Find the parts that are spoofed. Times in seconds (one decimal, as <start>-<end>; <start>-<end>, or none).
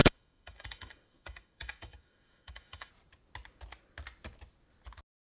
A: 0.0-2.9